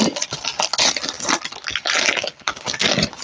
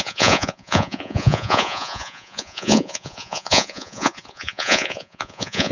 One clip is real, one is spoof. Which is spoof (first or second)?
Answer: second